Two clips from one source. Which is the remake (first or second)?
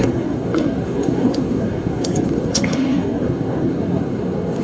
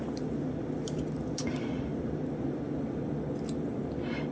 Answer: first